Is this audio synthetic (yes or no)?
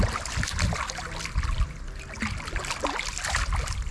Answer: no